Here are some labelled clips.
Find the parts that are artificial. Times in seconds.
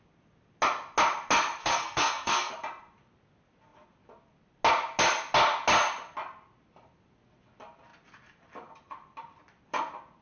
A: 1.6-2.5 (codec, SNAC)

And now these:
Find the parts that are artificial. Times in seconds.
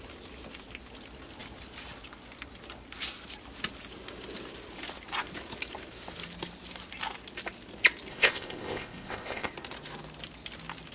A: 8.1-9.5 (codec, ZipCodec)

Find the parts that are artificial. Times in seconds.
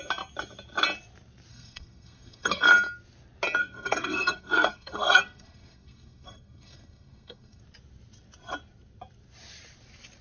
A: 1.5-2.6 (codec, SNAC); 3.6-7.6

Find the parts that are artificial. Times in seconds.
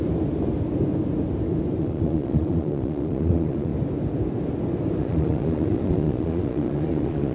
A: 1.8-3.7 (vocoder, Vocos); 5.0-7.3